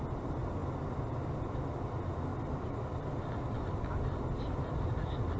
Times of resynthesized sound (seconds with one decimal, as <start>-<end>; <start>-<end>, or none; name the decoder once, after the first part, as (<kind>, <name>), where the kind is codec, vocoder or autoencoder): 0.6-1.9 (vocoder, BigVGAN v2); 2.3-3.3